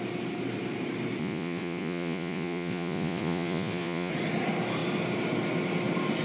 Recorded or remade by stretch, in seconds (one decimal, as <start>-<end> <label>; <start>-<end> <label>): 0.0-1.2 recorded; 1.2-4.1 remade; 4.1-6.2 recorded